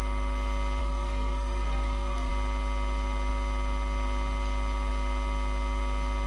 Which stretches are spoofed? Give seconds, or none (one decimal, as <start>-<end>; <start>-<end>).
0.8-2.3